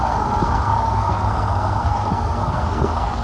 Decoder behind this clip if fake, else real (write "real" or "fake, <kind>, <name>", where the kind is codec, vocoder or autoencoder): fake, codec, SNAC